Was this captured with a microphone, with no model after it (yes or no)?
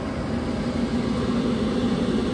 yes